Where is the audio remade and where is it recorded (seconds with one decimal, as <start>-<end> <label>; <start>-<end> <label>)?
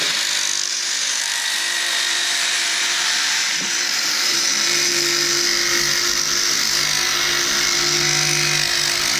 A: 0.0-0.7 recorded; 0.7-4.9 remade; 4.9-9.2 recorded